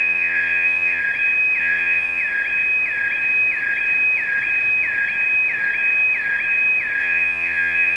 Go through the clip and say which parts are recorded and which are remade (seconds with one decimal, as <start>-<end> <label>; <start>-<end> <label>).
0.0-1.0 remade; 1.0-1.6 recorded; 1.6-2.2 remade; 2.2-7.0 recorded; 7.0-8.0 remade